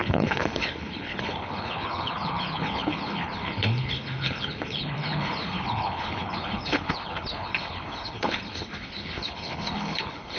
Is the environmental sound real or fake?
fake